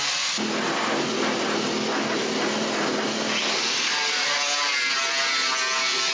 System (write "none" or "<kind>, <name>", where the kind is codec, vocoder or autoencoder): none